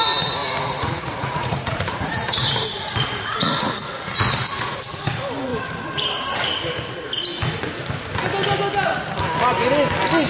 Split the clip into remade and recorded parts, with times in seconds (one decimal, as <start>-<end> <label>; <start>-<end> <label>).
0.0-0.4 recorded; 0.4-5.1 remade; 5.1-10.3 recorded